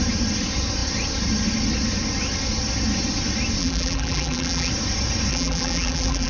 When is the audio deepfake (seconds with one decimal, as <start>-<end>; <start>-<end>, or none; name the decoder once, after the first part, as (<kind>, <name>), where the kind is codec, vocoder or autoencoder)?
3.6-4.7 (vocoder, BigVGAN v2); 5.3-6.3